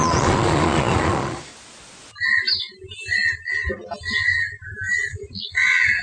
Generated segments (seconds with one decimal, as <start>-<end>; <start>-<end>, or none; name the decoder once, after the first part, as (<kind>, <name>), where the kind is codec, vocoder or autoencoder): 0.0-1.5 (vocoder, Vocos); 5.1-6.0

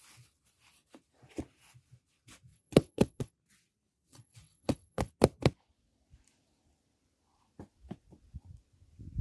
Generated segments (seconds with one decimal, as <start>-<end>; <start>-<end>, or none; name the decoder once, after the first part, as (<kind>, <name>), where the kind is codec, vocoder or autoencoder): 2.5-3.3 (vocoder, WaveNeXt); 4.1-5.1